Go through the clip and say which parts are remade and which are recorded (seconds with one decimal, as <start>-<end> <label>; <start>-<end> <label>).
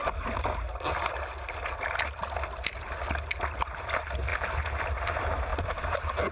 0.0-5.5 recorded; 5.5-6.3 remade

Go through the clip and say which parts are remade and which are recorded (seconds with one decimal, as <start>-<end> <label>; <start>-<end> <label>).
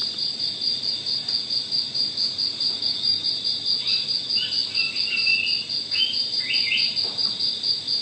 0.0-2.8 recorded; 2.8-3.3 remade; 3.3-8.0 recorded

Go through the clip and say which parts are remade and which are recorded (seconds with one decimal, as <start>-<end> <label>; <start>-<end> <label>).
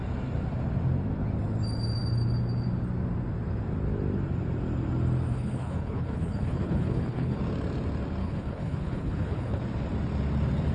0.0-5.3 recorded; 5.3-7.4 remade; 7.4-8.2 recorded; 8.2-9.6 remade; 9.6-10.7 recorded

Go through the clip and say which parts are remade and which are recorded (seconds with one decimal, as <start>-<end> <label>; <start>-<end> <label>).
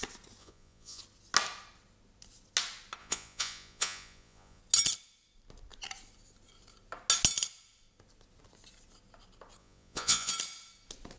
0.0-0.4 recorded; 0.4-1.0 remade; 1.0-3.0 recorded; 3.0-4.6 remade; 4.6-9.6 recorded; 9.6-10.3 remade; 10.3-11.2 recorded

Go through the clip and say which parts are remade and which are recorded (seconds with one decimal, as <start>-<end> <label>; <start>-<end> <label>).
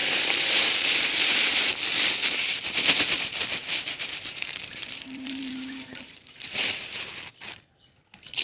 0.0-1.7 remade; 1.7-3.6 recorded; 3.6-7.3 remade; 7.3-8.4 recorded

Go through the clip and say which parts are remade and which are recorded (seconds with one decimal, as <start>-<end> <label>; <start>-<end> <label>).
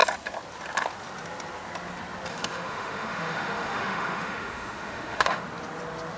0.0-2.3 recorded; 2.3-5.4 remade; 5.4-6.2 recorded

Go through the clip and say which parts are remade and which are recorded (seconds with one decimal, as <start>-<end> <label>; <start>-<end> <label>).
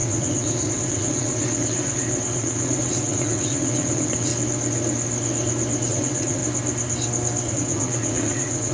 0.0-4.3 remade; 4.3-5.9 recorded; 5.9-6.4 remade; 6.4-7.5 recorded; 7.5-8.7 remade